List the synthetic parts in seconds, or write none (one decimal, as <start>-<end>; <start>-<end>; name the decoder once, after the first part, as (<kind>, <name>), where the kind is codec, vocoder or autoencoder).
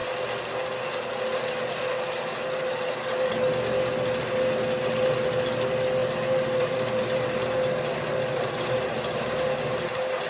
6.0-10.3 (vocoder, BigVGAN v2)